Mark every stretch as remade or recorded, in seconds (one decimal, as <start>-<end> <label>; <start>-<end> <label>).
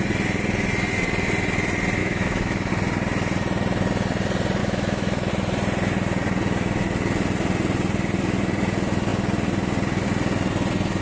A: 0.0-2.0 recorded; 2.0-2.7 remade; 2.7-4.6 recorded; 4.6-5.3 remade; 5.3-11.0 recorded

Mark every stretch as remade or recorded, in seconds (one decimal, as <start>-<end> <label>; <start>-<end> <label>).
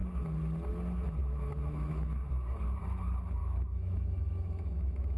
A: 0.0-1.2 recorded; 1.2-1.9 remade; 1.9-3.4 recorded; 3.4-5.2 remade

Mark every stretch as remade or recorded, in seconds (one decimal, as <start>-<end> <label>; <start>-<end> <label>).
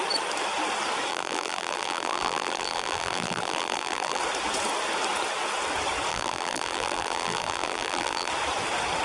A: 0.0-1.1 recorded; 1.1-4.2 remade; 4.2-6.1 recorded; 6.1-8.3 remade; 8.3-9.0 recorded